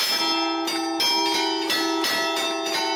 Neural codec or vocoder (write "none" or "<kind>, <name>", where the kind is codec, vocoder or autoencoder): none